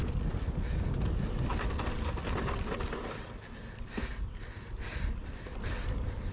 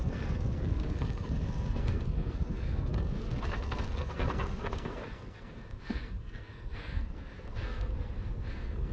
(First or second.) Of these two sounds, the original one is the first